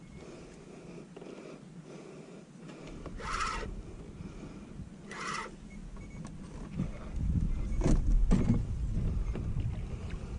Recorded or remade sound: recorded